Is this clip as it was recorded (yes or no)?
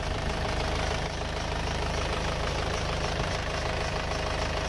no